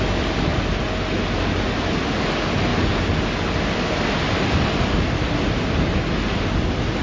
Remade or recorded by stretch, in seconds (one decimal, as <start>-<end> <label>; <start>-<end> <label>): 0.0-7.0 recorded